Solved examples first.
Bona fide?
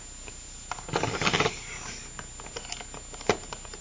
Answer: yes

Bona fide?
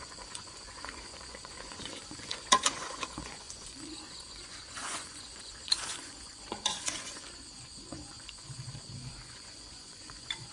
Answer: no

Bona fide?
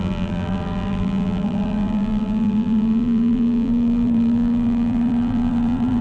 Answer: no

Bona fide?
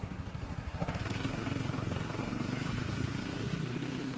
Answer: no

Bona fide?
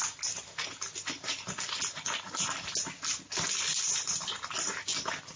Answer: yes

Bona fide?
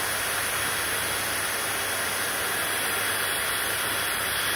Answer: yes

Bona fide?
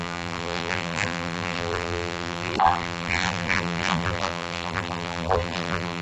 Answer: no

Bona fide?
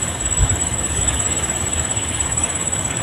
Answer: no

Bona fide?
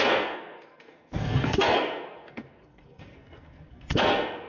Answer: no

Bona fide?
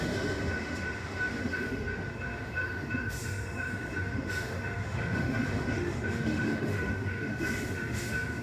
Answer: no